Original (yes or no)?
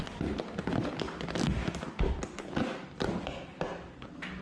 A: yes